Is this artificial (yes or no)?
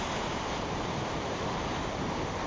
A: yes